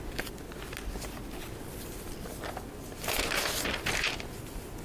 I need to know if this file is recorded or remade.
recorded